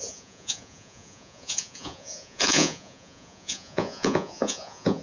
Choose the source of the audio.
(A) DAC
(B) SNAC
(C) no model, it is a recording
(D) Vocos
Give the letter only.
D